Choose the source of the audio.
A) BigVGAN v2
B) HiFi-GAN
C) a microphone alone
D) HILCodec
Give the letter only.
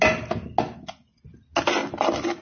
C